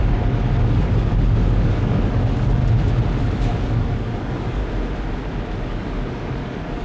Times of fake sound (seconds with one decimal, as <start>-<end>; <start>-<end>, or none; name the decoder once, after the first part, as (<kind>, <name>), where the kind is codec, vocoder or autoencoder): 0.0-2.6 (codec, DAC); 3.2-4.6; 5.6-6.8